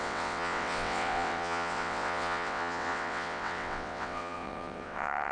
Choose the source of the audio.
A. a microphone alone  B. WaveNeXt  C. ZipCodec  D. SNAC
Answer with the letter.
B